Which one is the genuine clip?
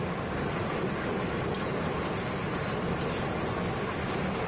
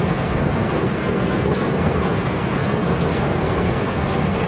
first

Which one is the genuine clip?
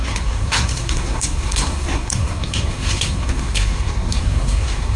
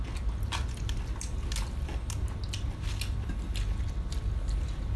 second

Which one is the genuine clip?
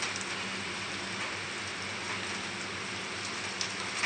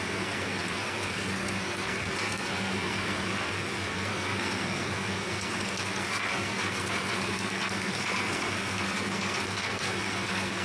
first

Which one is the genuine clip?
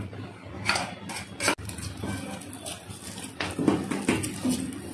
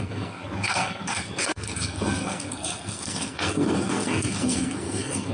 first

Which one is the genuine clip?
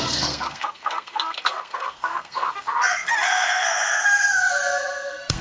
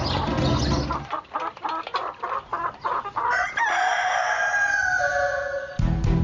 second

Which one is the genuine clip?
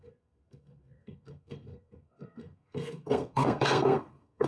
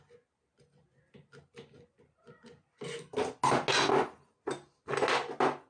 second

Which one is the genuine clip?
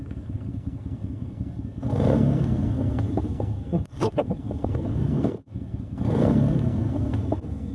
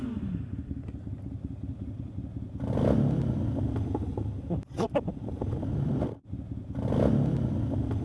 second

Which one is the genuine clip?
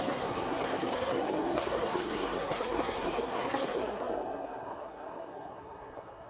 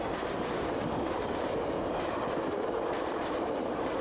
second